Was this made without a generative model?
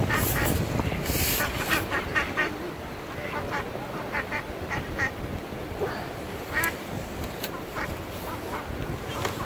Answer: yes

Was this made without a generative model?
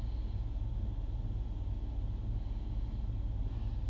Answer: yes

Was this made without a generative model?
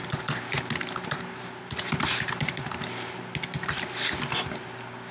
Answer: yes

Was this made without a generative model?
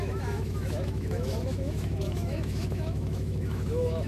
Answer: no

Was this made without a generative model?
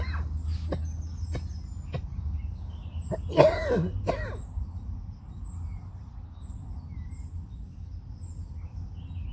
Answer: yes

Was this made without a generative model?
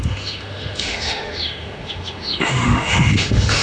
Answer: no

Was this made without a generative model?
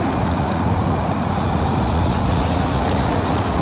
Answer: no